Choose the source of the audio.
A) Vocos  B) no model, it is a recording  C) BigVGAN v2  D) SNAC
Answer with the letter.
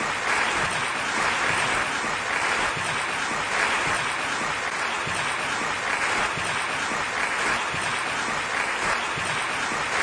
B